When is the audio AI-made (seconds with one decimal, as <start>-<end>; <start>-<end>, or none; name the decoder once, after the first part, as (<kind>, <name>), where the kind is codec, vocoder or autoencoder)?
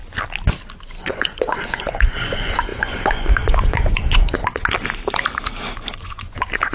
1.0-4.4 (vocoder, Vocos); 5.9-6.7